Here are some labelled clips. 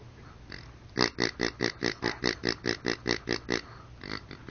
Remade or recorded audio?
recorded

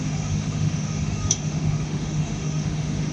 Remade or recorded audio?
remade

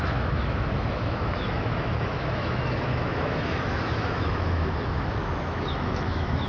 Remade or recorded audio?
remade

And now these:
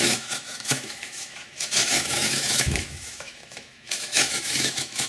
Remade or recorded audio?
remade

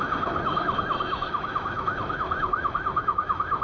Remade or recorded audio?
remade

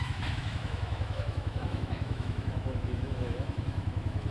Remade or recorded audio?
remade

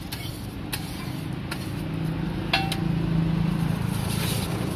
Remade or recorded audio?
recorded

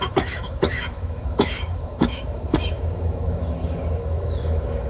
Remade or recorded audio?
remade